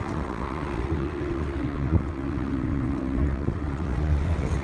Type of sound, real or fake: fake